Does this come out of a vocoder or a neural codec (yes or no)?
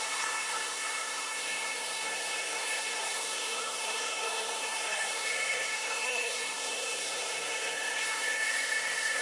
yes